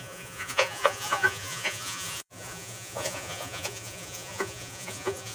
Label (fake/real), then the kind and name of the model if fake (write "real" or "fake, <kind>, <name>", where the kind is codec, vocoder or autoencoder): fake, vocoder, Vocos